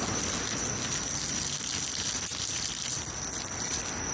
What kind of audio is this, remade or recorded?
recorded